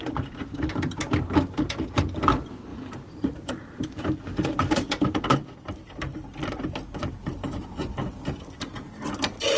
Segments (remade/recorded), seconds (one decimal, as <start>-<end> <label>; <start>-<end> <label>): 0.0-2.7 recorded; 2.7-4.0 remade; 4.0-7.0 recorded; 7.0-8.6 remade; 8.6-9.6 recorded